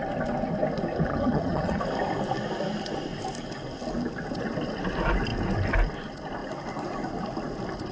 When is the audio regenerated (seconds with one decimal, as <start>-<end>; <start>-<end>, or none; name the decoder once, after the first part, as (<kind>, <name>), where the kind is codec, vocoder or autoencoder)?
1.1-1.8 (vocoder, HiFi-GAN)